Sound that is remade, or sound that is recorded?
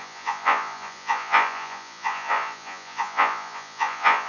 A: remade